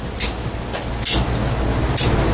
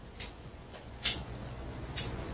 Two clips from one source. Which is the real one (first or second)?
first